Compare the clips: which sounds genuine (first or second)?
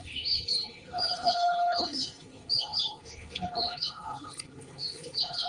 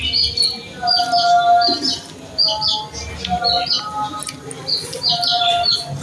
second